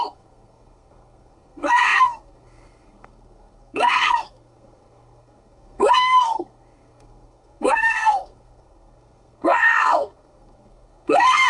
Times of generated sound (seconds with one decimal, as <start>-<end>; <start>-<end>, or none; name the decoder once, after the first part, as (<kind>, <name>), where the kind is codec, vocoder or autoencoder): 0.0-11.5 (codec, SNAC)